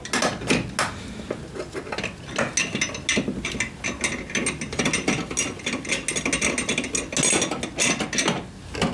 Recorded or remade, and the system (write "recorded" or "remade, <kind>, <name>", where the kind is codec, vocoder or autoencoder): recorded